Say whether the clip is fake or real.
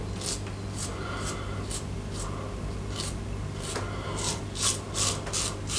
real